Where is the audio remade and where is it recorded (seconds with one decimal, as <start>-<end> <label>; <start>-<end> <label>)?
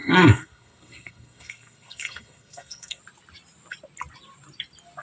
0.0-3.0 remade; 3.0-5.0 recorded